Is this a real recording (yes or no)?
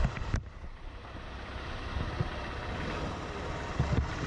yes